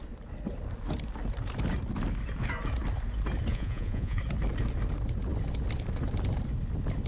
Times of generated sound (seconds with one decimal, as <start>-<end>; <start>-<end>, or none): 3.5-4.2